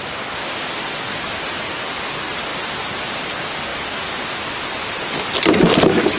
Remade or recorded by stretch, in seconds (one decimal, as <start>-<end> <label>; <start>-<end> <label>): 0.0-6.2 recorded